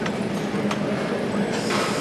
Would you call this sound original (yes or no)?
yes